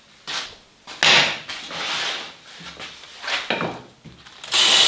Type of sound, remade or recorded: recorded